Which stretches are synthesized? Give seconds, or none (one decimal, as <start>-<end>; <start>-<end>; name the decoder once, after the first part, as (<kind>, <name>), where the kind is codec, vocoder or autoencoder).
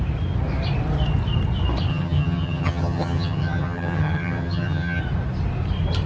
1.9-5.0 (vocoder, HiFi-GAN)